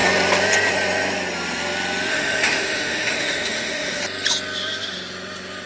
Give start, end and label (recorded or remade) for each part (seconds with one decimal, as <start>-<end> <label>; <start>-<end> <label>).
0.0-2.1 recorded; 2.1-4.0 remade; 4.0-5.7 recorded